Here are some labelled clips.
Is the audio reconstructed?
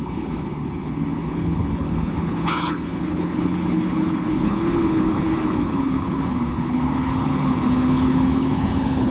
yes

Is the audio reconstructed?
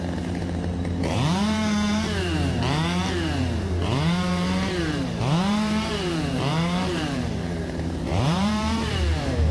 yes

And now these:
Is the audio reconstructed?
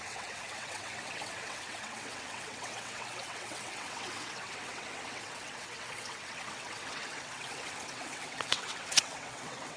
yes